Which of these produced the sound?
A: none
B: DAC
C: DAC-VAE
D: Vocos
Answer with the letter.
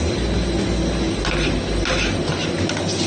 A